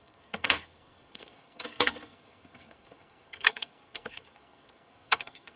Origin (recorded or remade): remade